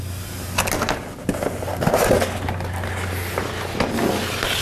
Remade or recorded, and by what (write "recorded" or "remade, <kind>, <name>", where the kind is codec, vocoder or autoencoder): recorded